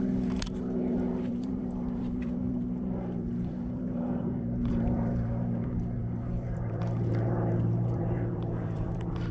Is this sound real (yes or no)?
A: no